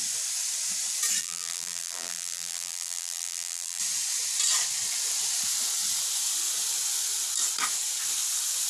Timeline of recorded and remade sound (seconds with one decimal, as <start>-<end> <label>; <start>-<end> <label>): 0.0-1.2 recorded; 1.2-3.8 remade; 3.8-8.7 recorded